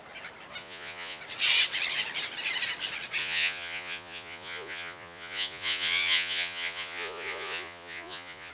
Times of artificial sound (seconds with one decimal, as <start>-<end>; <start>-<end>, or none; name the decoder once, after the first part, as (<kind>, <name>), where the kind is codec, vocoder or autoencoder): 0.6-1.2 (vocoder, Vocos); 3.2-8.5